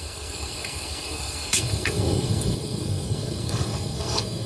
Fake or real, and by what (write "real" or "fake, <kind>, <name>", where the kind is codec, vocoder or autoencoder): fake, codec, SNAC